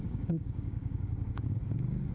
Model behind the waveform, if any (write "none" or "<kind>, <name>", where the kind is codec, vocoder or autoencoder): codec, DAC